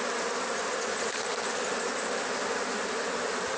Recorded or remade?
recorded